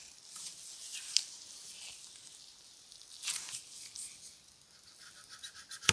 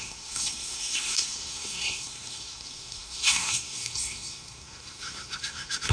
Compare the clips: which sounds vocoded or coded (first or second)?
second